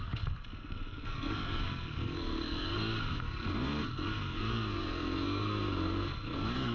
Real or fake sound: fake